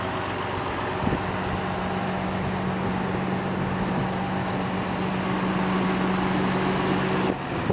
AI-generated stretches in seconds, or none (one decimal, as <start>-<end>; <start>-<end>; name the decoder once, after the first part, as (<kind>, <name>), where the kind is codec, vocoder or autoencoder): none